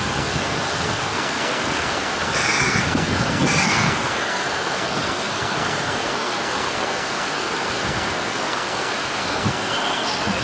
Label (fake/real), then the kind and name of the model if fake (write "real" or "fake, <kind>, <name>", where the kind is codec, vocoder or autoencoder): fake, codec, SNAC